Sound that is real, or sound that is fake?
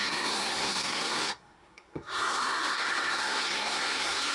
fake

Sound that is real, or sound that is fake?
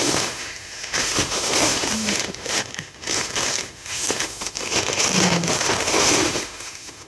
fake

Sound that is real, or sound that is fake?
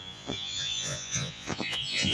fake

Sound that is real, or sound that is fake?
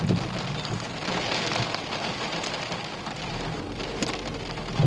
real